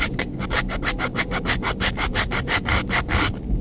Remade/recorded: recorded